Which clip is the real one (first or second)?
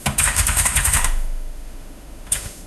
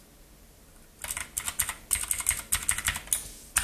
second